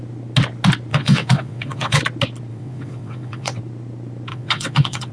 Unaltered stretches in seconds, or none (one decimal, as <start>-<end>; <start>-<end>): 0.0-0.9; 2.0-2.5; 3.6-4.3